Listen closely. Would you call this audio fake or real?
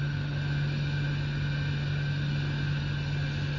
real